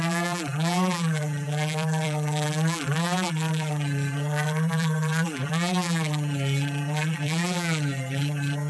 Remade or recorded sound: remade